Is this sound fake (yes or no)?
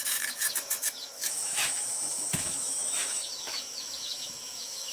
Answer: yes